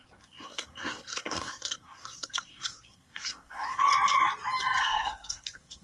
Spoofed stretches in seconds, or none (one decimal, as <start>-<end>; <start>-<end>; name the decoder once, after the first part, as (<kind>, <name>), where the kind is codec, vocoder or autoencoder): 0.0-3.9 (codec, SNAC); 4.8-5.8